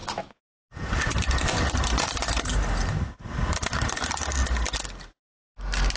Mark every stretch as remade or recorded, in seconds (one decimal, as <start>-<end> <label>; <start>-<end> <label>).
0.0-0.6 remade; 0.6-6.0 recorded